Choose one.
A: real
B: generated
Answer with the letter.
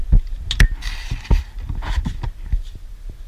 A